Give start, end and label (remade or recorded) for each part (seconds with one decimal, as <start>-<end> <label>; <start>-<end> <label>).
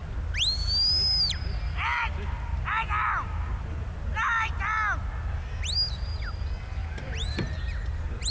0.0-8.3 recorded